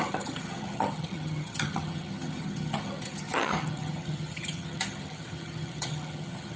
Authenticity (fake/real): fake